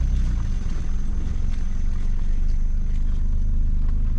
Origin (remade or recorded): recorded